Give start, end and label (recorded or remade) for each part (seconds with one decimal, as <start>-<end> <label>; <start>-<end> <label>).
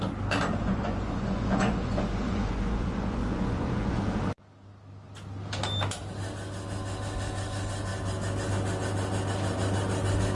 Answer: 0.0-0.6 recorded; 0.6-4.0 remade; 4.0-10.3 recorded